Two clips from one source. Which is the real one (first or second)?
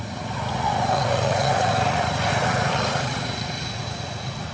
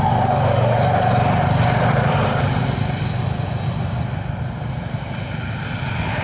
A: second